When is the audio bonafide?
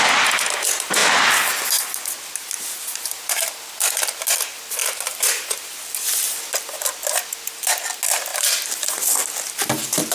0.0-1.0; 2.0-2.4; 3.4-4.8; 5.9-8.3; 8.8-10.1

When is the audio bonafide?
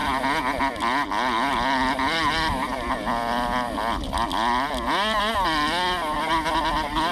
0.0-7.1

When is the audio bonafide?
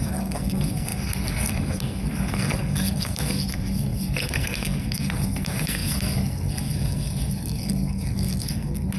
none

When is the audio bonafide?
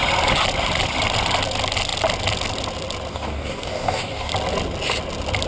0.0-3.1; 4.3-5.5